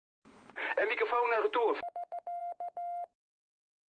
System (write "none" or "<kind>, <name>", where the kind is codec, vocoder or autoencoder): vocoder, BigVGAN v2